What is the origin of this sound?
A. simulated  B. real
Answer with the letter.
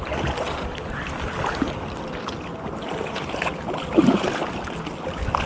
B